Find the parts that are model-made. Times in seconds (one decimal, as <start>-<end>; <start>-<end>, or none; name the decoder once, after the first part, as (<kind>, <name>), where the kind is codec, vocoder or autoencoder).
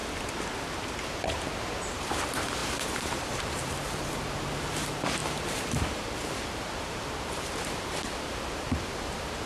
2.0-9.5 (vocoder, BigVGAN v2)